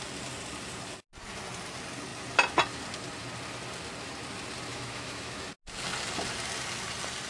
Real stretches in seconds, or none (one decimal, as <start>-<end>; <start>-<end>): 0.0-4.7; 5.5-7.3